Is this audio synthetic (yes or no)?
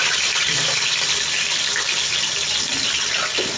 no